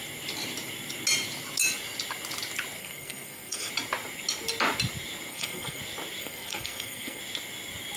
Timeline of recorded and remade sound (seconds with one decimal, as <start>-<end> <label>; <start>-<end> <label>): 0.0-2.8 recorded; 2.8-3.7 remade; 3.7-5.3 recorded; 5.3-5.8 remade; 5.8-6.2 recorded; 6.2-7.2 remade; 7.2-8.0 recorded